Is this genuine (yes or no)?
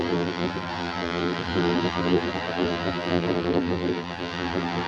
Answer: no